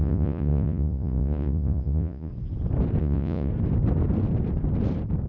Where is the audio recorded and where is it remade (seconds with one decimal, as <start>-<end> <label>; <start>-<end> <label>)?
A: 0.0-2.3 remade; 2.3-3.0 recorded; 3.0-3.5 remade; 3.5-5.3 recorded